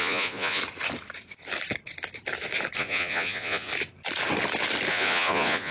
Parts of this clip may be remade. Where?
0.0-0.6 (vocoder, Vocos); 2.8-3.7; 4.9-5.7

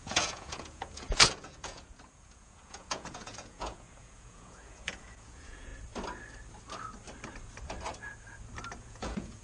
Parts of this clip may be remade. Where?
0.0-5.7 (vocoder, Vocos); 8.8-9.4

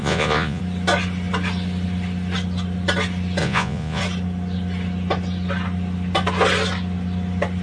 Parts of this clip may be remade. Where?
0.0-0.6 (vocoder, Vocos); 3.4-4.0